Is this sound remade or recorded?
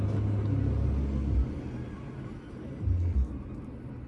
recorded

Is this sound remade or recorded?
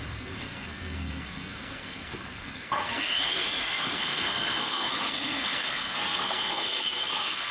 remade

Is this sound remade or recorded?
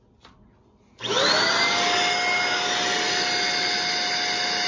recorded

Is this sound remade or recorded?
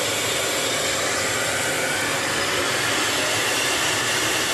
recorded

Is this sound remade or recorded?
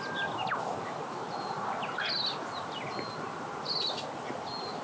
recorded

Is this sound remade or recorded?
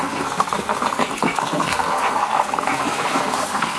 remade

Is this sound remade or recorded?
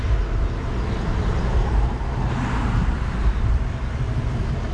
recorded